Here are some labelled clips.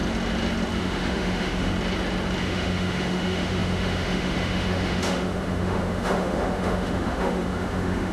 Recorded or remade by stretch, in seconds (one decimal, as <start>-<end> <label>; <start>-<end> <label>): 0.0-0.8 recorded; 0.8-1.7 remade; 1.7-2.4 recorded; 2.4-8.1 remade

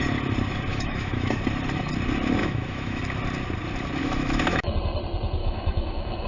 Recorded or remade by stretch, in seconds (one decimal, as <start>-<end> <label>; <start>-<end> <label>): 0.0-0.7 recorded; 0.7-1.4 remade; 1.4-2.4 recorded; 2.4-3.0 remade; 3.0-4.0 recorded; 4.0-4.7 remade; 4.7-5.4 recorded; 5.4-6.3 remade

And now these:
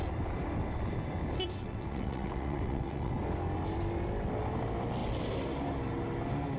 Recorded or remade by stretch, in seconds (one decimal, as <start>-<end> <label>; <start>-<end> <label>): 0.0-1.6 recorded; 1.6-3.1 remade; 3.1-6.6 recorded